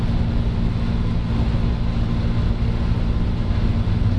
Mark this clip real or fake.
real